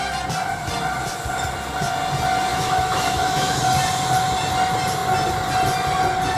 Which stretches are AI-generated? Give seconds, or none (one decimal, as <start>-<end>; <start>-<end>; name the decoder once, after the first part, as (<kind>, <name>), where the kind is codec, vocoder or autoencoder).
2.5-3.6 (autoencoder, DAC-VAE)